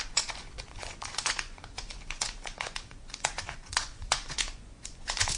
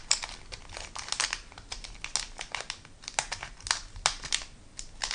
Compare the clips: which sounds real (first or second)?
second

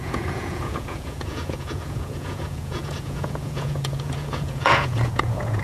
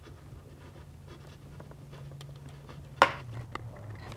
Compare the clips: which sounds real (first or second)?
second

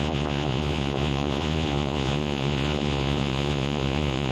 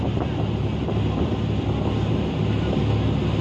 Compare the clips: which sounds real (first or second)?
second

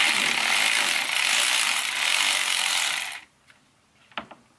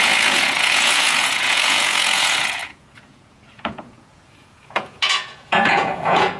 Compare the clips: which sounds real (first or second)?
first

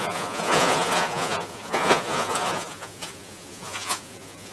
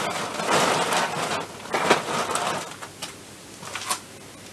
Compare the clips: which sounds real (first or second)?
second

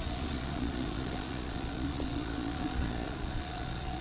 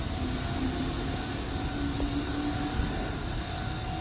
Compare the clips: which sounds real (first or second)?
second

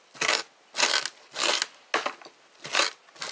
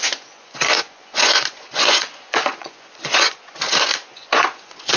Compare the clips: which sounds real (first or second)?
first